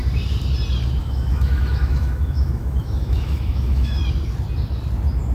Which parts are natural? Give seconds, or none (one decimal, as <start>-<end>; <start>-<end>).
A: 0.0-1.0; 4.0-5.3